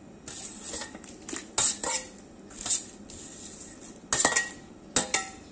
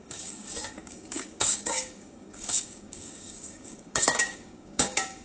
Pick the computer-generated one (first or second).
second